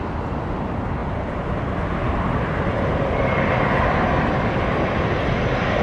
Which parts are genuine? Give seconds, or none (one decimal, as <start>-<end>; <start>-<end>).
0.0-1.0; 4.5-5.8